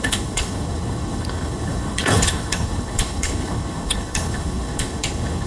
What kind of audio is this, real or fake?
fake